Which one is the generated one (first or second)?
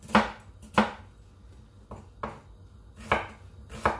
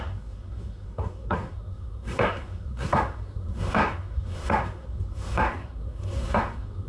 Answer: second